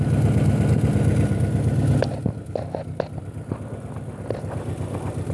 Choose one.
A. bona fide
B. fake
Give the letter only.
A